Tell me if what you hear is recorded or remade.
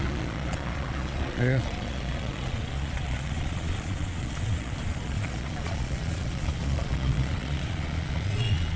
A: remade